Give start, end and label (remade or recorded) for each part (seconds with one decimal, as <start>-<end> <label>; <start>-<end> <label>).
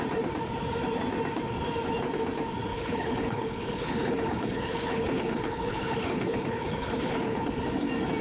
0.0-2.7 recorded; 2.7-7.5 remade; 7.5-8.2 recorded